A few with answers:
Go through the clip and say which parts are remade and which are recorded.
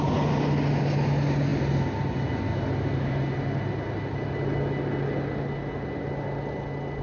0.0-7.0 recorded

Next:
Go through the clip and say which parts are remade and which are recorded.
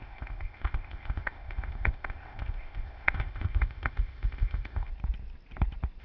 0.0-4.9 remade; 4.9-6.0 recorded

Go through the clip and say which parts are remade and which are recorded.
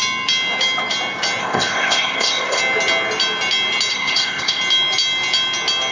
0.0-1.4 recorded; 1.4-2.6 remade; 2.6-3.9 recorded; 3.9-4.6 remade; 4.6-5.9 recorded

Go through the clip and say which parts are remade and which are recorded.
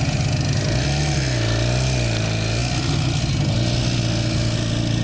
0.0-5.0 recorded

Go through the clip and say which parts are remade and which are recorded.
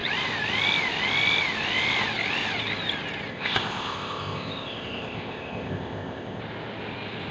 0.0-3.3 recorded; 3.3-6.4 remade; 6.4-7.3 recorded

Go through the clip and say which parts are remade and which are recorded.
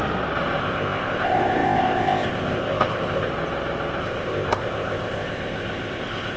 0.0-0.6 recorded; 0.6-3.3 remade; 3.3-4.0 recorded; 4.0-6.4 remade